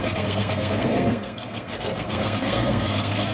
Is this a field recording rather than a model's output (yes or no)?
no